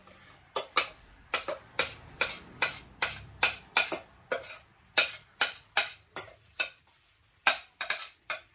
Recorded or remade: remade